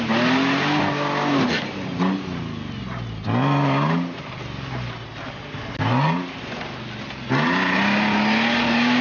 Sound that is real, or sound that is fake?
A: real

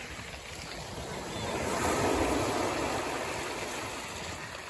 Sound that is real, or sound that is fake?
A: real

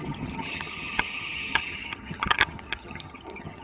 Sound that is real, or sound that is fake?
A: fake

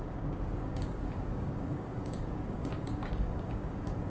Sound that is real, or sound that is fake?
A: fake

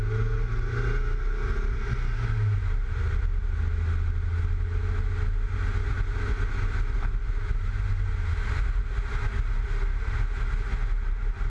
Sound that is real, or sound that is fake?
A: real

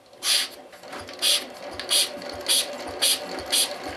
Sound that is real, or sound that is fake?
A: real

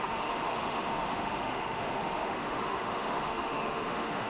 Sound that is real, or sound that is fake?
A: fake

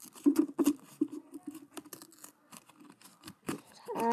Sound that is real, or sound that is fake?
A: real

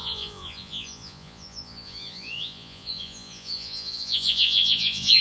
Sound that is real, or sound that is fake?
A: fake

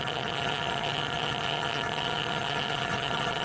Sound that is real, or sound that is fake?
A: fake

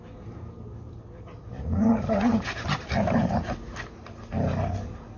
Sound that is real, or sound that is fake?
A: real